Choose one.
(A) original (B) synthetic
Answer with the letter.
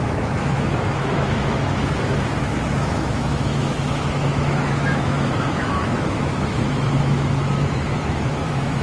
B